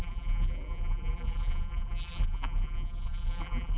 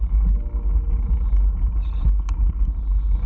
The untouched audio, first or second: second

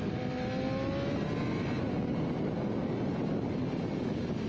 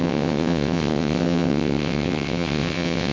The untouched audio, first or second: first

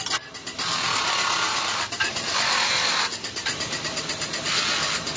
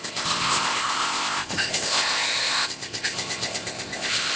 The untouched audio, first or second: first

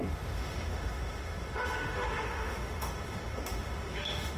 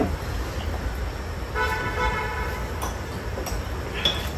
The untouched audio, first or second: second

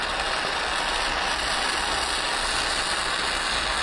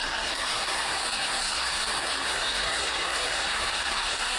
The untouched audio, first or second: first